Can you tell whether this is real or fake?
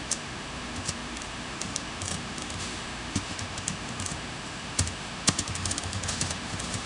fake